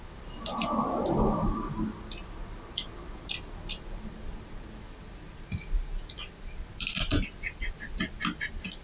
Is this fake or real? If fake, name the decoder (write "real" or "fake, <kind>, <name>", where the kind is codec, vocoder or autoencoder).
real